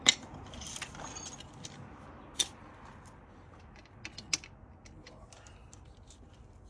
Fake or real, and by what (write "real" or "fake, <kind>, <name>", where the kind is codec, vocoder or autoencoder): real